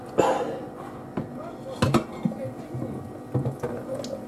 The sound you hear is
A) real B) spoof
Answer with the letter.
A